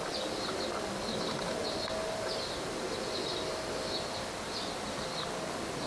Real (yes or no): yes